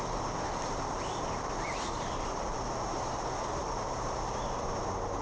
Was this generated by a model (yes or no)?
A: no